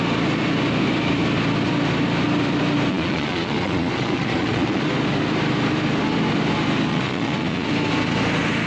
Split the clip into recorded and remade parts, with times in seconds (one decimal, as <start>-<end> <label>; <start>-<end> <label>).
0.0-2.9 recorded; 2.9-4.8 remade; 4.8-6.9 recorded; 6.9-7.7 remade; 7.7-8.7 recorded